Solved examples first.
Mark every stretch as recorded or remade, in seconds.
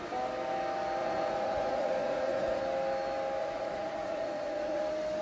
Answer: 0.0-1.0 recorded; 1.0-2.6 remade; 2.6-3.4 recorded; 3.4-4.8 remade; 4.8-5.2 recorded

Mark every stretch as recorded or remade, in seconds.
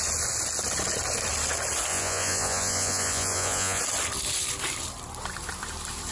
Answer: 0.0-1.9 recorded; 1.9-3.8 remade; 3.8-6.1 recorded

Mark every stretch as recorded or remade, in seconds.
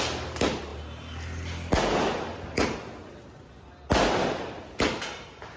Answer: 0.0-5.6 recorded